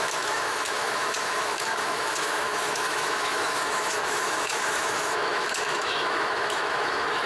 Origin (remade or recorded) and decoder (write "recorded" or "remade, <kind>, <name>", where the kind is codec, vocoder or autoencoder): remade, autoencoder, DAC-VAE